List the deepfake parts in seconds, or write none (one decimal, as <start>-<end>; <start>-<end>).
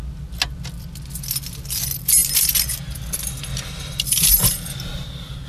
none